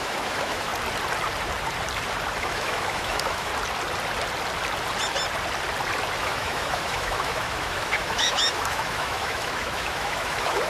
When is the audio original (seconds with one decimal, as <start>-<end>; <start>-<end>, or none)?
0.7-2.4; 3.5-6.2